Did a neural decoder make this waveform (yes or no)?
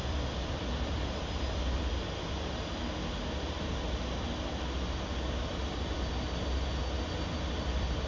no